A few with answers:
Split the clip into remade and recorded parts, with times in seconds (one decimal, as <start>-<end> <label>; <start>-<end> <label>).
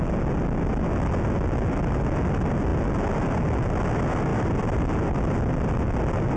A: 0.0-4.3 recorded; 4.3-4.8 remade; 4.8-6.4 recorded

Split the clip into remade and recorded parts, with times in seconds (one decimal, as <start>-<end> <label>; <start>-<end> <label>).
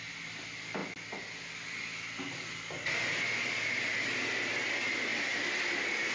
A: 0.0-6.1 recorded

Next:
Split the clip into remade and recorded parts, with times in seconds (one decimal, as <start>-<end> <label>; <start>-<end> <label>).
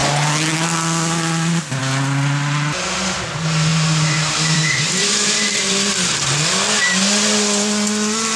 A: 0.0-3.7 recorded; 3.7-5.9 remade; 5.9-8.4 recorded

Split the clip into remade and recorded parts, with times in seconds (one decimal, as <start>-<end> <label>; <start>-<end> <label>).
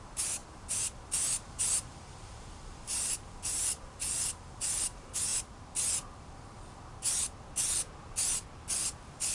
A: 0.0-5.3 remade; 5.3-8.8 recorded; 8.8-9.3 remade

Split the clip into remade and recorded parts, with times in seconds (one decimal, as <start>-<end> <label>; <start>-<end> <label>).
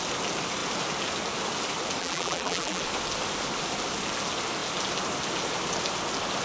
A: 0.0-2.0 recorded; 2.0-2.8 remade; 2.8-6.4 recorded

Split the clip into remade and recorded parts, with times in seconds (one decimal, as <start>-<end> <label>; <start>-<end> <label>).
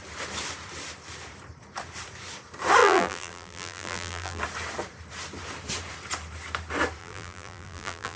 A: 0.0-2.8 recorded; 2.8-4.4 remade; 4.4-7.0 recorded; 7.0-8.2 remade